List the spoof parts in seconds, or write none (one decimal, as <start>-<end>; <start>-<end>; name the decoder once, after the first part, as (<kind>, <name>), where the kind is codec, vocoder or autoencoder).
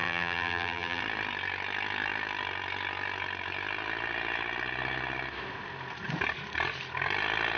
0.0-1.0 (vocoder, BigVGAN v2)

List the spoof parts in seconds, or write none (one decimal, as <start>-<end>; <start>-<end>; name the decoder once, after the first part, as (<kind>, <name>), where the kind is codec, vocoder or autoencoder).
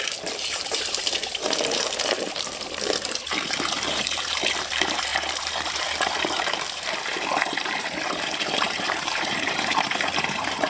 0.0-10.7 (vocoder, BigVGAN v2)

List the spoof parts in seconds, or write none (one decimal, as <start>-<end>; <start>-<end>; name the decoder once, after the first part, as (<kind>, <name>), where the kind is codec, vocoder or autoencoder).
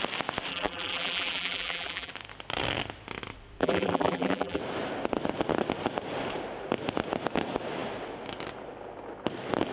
0.5-2.1 (vocoder, BigVGAN v2); 3.6-4.6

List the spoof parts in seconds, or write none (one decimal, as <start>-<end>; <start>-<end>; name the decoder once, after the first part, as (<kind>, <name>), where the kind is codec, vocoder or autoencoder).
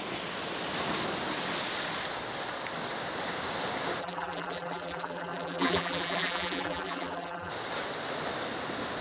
4.0-7.5 (vocoder, BigVGAN v2)